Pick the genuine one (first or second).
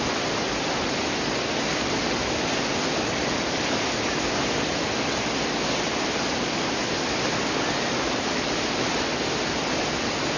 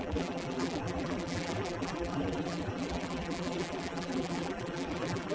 first